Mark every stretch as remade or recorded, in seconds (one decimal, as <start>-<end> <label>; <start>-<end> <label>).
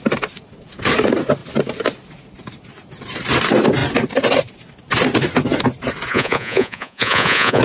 0.0-6.1 recorded; 6.1-7.6 remade